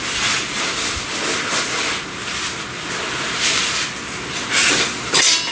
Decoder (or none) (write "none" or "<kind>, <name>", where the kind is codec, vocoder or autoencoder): none